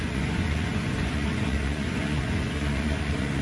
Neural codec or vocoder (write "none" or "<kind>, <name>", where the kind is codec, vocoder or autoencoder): vocoder, Vocos